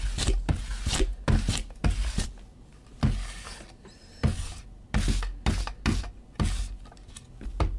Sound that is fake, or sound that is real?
real